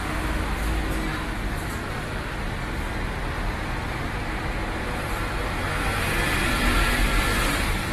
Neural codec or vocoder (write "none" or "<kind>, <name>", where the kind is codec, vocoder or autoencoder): none